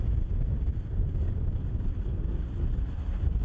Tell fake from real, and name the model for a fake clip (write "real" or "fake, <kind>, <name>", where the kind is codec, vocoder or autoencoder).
real